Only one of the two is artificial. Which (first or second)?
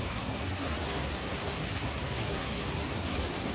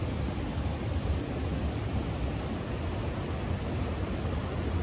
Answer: first